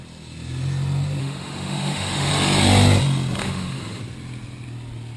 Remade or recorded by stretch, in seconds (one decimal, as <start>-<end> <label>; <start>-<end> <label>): 0.0-1.2 recorded; 1.2-2.3 remade; 2.3-3.4 recorded; 3.4-4.0 remade; 4.0-5.2 recorded